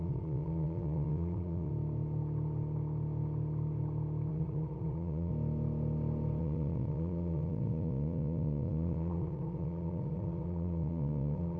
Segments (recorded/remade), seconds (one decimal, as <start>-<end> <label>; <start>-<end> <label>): 0.0-1.7 remade; 1.7-4.3 recorded; 4.3-5.3 remade; 5.3-6.4 recorded; 6.4-11.6 remade